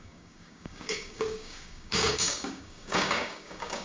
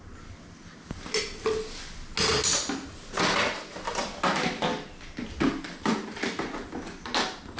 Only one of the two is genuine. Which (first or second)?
second